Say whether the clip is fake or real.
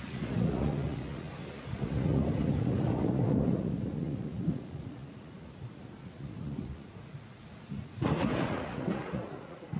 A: fake